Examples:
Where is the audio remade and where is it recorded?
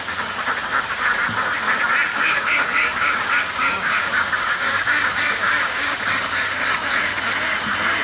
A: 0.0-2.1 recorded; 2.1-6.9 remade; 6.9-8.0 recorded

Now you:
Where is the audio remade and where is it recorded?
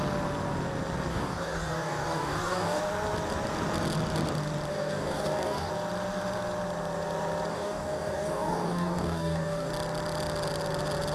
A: 0.0-1.1 recorded; 1.1-2.8 remade; 2.8-4.7 recorded; 4.7-5.7 remade; 5.7-7.5 recorded; 7.5-9.7 remade; 9.7-11.1 recorded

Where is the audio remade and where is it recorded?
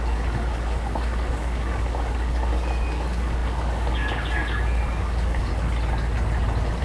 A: 0.0-5.5 remade; 5.5-6.8 recorded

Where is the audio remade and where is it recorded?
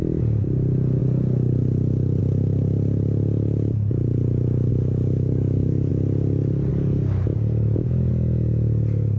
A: 0.0-4.7 recorded; 4.7-5.9 remade; 5.9-6.7 recorded; 6.7-8.1 remade; 8.1-9.2 recorded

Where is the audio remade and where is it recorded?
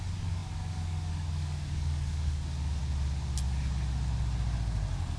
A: 0.0-2.8 remade; 2.8-5.2 recorded